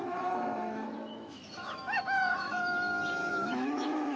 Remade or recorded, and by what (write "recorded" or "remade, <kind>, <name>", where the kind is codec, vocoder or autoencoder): remade, autoencoder, DAC-VAE